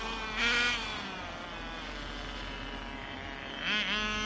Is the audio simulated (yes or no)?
no